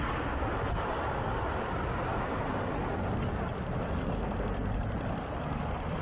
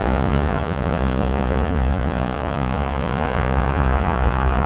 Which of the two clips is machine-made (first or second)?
second